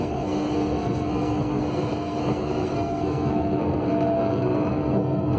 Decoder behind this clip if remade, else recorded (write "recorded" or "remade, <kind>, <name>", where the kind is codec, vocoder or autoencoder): remade, codec, SNAC